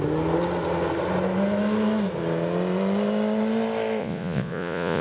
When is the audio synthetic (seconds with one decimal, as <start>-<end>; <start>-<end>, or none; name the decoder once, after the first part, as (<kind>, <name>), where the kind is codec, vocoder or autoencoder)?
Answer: 4.0-5.0 (vocoder, Vocos)